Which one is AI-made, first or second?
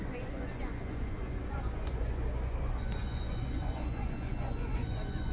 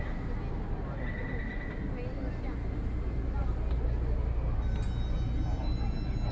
first